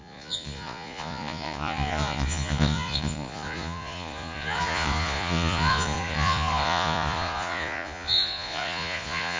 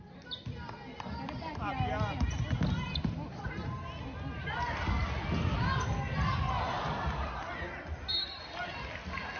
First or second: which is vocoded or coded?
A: first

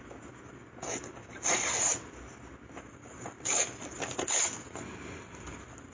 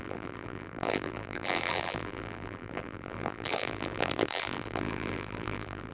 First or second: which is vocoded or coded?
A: second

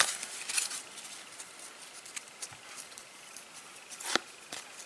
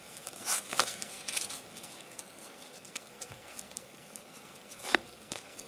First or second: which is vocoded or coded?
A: second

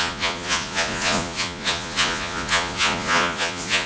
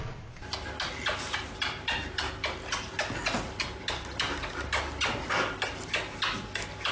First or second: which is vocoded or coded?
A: first